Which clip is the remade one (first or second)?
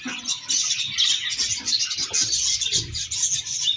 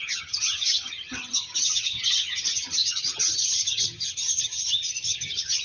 second